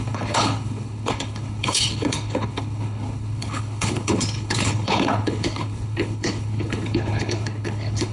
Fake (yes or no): yes